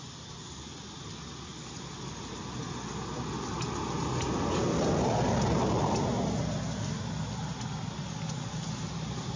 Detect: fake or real real